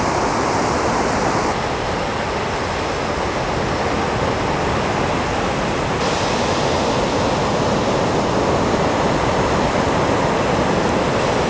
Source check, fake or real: real